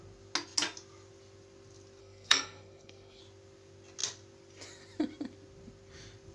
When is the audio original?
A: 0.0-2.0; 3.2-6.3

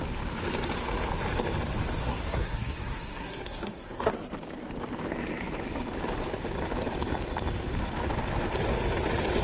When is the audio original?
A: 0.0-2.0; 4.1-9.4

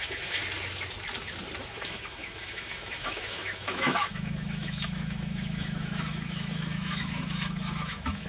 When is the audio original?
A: 0.4-1.7

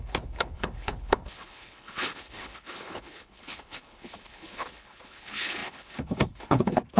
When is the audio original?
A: none